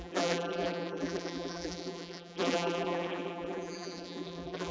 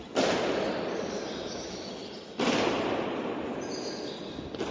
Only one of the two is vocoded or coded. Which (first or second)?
first